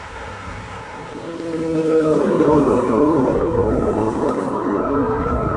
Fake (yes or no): yes